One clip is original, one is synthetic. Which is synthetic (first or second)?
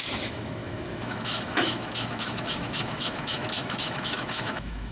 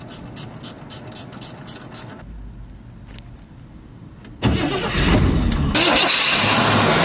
first